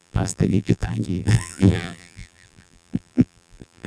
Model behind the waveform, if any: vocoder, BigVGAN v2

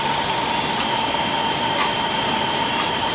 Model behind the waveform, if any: none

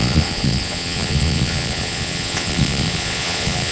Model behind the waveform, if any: vocoder, Vocos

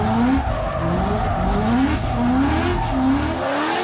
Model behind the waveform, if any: none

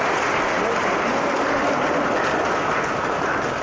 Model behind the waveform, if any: none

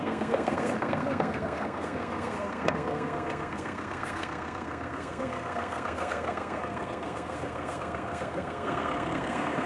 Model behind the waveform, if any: codec, SNAC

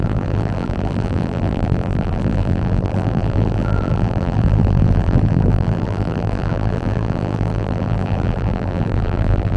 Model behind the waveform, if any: vocoder, BigVGAN v2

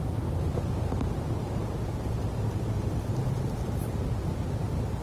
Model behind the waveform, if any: none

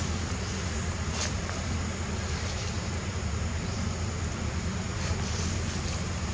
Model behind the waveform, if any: none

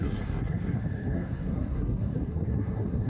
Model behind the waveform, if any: codec, SNAC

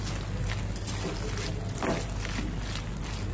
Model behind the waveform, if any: none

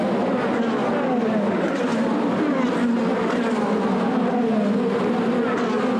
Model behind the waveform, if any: none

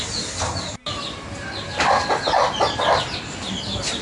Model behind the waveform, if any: none